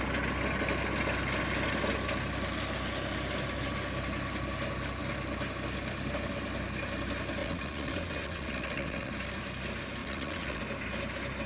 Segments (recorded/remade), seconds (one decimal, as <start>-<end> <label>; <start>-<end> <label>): 0.0-7.4 recorded; 7.4-9.1 remade; 9.1-10.0 recorded; 10.0-10.6 remade; 10.6-11.5 recorded